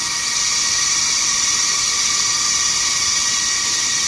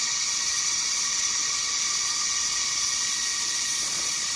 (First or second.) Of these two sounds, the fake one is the second